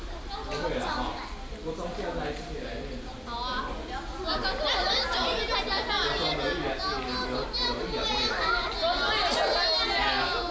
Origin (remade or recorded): recorded